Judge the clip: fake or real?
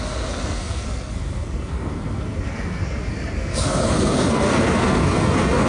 fake